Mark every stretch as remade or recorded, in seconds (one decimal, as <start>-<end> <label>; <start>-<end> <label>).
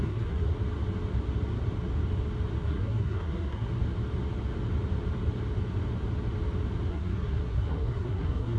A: 0.0-0.5 remade; 0.5-2.6 recorded; 2.6-3.7 remade; 3.7-6.9 recorded; 6.9-8.6 remade